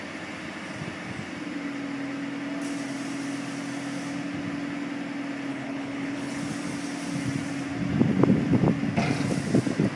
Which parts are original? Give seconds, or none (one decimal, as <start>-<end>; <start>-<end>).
0.0-5.5; 6.4-10.0